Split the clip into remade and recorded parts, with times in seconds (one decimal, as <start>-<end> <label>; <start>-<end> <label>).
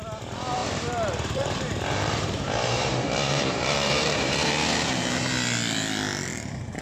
0.0-0.6 recorded; 0.6-4.5 remade; 4.5-6.8 recorded